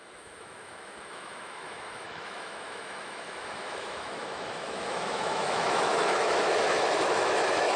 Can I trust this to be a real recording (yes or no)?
no